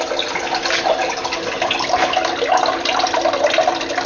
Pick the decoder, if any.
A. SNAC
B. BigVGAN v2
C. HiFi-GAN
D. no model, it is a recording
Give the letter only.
D